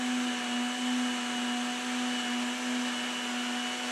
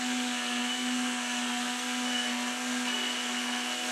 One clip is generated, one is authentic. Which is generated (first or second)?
second